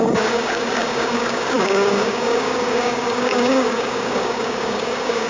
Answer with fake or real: fake